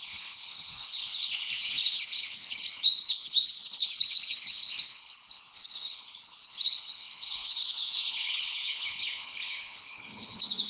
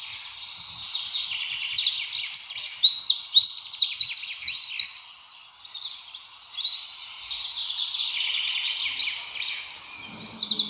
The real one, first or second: second